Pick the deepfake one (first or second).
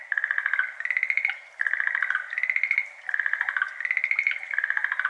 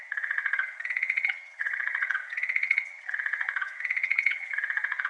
second